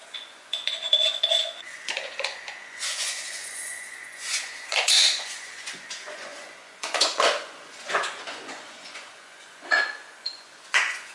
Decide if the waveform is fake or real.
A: fake